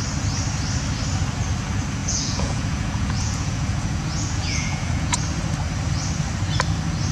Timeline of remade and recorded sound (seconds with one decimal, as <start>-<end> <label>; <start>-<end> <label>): 0.0-2.0 recorded; 2.0-5.2 remade; 5.2-7.1 recorded